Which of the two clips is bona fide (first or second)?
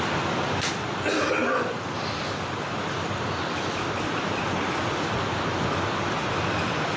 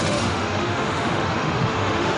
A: first